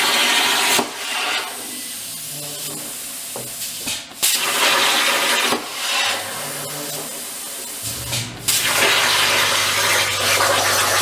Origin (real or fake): real